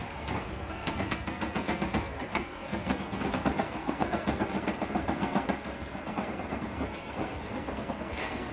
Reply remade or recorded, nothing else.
remade